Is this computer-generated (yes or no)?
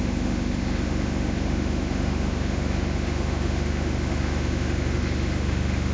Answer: yes